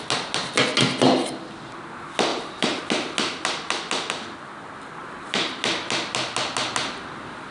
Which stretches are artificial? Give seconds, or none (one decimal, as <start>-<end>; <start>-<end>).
2.3-2.8; 5.0-5.6